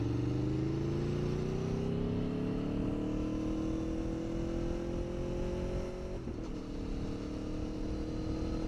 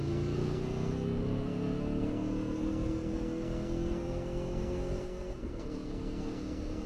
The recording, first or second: first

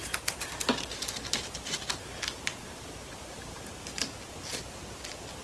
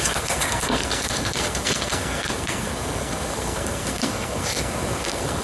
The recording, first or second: first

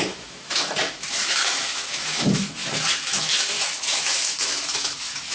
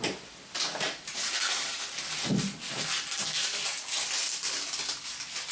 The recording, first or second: second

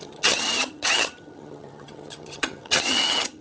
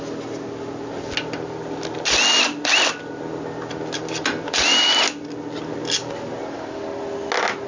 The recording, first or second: second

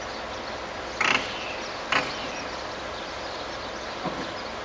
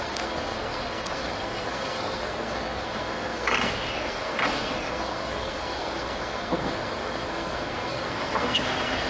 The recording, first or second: first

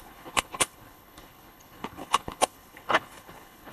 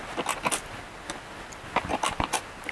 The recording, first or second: second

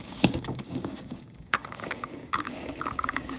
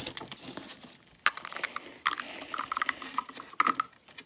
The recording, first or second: second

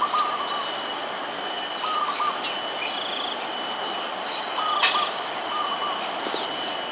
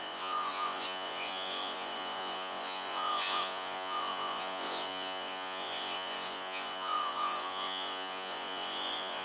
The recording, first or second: first